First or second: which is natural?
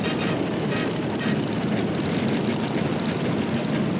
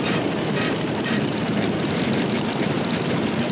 first